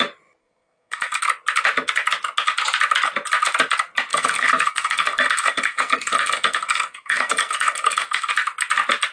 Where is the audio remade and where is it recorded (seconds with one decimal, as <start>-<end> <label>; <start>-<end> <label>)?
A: 0.0-0.4 recorded; 0.4-1.2 remade; 1.2-4.1 recorded; 4.1-8.3 remade; 8.3-9.1 recorded